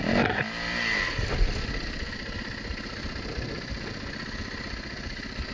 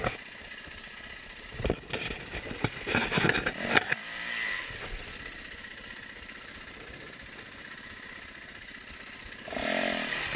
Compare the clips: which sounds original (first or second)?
first